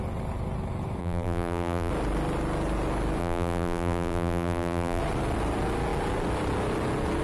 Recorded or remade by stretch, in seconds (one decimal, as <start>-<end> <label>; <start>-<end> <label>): 0.0-1.0 recorded; 1.0-1.9 remade; 1.9-3.2 recorded; 3.2-5.0 remade; 5.0-7.2 recorded